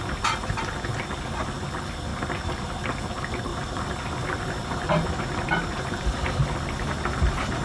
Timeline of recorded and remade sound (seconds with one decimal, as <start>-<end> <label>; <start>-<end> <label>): 0.0-2.1 recorded; 2.1-2.6 remade; 2.6-3.5 recorded; 3.5-6.4 remade; 6.4-7.6 recorded